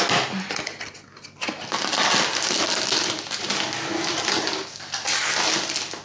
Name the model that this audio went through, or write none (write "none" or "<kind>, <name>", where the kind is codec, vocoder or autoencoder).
none